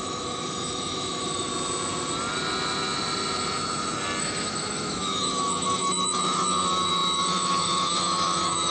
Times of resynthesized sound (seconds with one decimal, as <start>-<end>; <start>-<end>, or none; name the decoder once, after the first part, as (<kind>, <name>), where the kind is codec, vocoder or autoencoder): 0.0-1.5 (autoencoder, DAC-VAE); 4.2-8.7